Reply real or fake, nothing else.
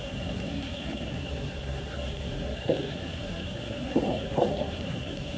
fake